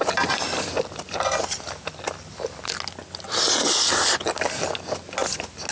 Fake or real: real